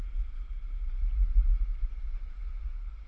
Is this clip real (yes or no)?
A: yes